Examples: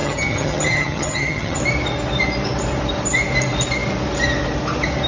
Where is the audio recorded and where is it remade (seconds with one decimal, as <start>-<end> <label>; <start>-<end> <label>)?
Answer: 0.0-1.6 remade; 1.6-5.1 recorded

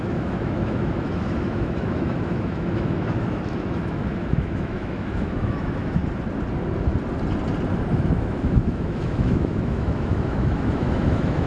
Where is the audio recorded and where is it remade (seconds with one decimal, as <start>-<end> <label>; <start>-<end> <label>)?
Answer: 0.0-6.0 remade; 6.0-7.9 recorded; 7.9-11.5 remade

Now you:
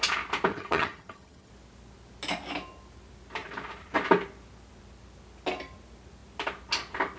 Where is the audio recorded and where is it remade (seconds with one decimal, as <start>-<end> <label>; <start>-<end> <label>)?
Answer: 0.0-0.5 recorded; 0.5-1.5 remade; 1.5-7.2 recorded